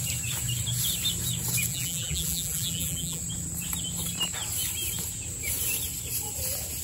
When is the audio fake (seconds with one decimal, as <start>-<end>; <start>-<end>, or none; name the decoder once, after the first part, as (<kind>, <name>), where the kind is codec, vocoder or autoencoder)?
1.7-3.2 (vocoder, BigVGAN v2)